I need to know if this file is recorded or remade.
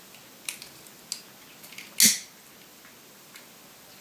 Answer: recorded